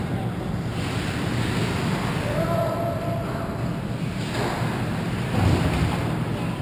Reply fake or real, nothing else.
real